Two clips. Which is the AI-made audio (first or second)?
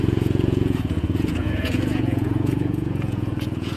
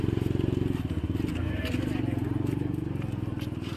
first